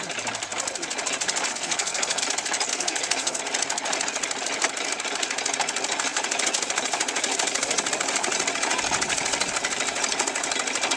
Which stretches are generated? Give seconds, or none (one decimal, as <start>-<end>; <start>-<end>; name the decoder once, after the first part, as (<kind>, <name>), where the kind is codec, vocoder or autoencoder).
1.5-2.2 (codec, SNAC); 2.7-3.4